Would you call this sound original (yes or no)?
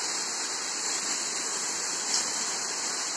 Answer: yes